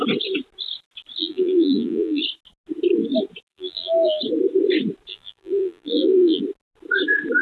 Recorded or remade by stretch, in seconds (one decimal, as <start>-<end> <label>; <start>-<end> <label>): 0.0-1.2 recorded; 1.2-2.2 remade; 2.2-3.5 recorded; 3.5-4.2 remade; 4.2-5.1 recorded; 5.1-6.4 remade; 6.4-7.4 recorded